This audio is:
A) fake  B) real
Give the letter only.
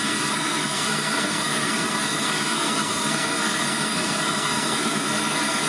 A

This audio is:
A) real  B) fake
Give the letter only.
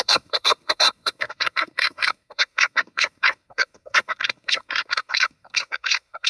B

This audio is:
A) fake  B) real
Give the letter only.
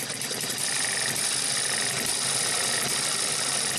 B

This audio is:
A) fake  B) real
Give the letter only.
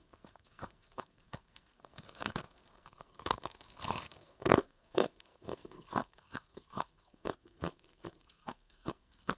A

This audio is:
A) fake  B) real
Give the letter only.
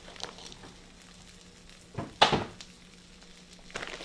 B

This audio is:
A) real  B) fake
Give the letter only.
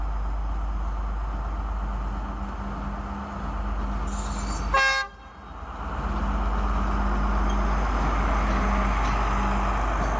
A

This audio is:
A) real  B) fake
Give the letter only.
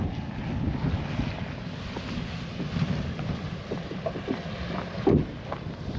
A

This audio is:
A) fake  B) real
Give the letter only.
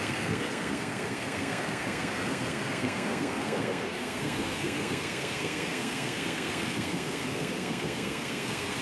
A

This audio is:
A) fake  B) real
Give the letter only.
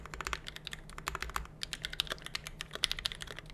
B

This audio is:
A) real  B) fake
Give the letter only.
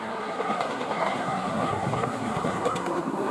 B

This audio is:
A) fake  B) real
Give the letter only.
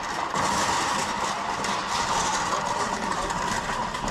B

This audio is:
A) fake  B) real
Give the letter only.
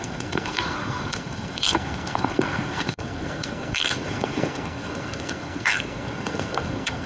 A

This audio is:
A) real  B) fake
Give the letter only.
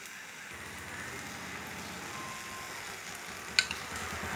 A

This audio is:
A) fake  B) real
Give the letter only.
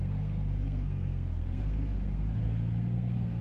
A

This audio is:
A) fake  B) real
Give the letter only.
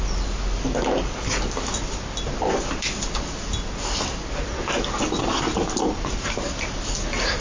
B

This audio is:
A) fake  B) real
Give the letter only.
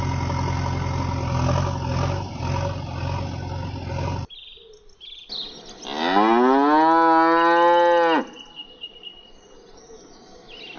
B